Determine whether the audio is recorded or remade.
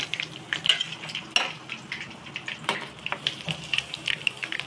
recorded